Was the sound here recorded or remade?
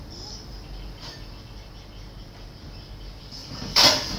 recorded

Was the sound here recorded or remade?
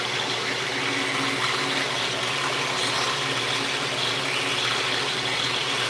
recorded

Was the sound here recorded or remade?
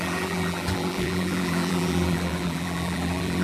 remade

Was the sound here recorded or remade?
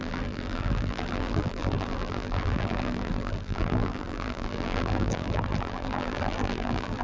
remade